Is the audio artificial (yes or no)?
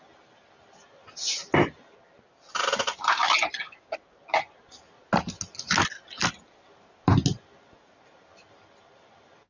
no